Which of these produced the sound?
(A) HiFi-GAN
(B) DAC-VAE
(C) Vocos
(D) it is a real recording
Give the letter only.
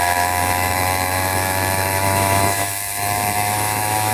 B